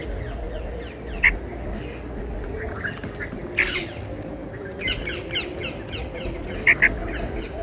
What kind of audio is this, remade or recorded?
recorded